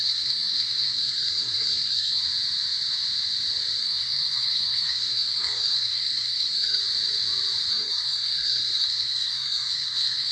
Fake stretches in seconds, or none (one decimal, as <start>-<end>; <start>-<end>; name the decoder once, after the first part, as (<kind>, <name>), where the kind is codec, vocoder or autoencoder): 0.0-2.2 (codec, SNAC); 3.8-6.8; 7.7-10.3